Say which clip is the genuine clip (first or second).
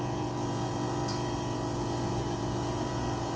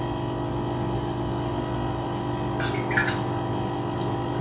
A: second